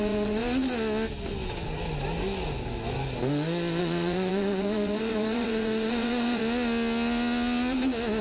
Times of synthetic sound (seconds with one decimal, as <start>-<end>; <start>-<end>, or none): 0.0-0.4; 3.8-6.4